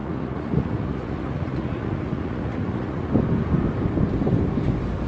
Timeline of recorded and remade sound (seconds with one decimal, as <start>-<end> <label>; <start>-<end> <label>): 0.0-3.1 remade; 3.1-5.1 recorded